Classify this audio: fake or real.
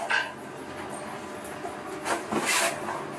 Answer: real